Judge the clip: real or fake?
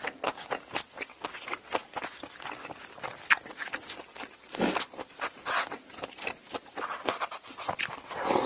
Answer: real